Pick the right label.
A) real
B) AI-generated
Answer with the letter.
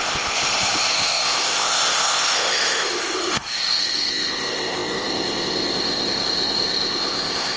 B